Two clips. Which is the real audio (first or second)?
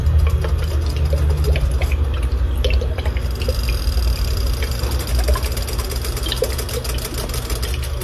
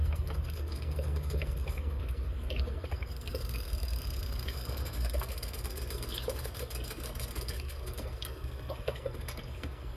first